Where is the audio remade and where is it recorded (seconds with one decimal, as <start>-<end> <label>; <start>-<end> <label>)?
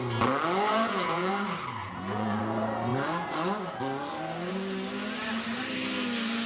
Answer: 0.0-0.7 recorded; 0.7-1.3 remade; 1.3-1.8 recorded; 1.8-2.4 remade; 2.4-6.5 recorded